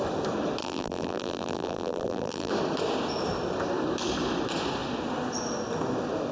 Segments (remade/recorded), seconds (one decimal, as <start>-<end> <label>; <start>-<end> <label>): 0.0-0.6 recorded; 0.6-2.5 remade; 2.5-6.3 recorded